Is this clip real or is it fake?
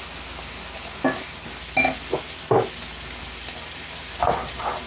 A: real